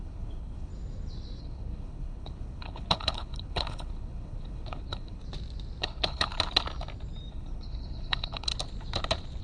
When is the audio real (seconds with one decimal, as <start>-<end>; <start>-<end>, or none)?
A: 0.7-1.4; 5.2-5.8; 6.3-7.3; 8.5-9.4